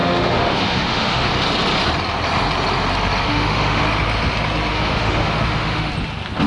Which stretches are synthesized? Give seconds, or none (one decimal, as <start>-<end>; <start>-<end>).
0.0-1.3; 3.3-3.8; 4.7-5.9